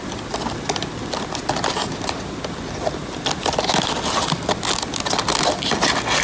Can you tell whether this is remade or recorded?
recorded